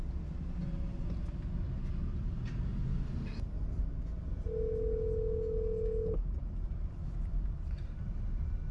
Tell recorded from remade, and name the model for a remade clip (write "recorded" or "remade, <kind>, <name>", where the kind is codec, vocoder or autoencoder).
recorded